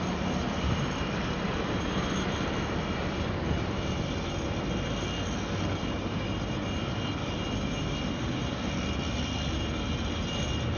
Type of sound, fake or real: real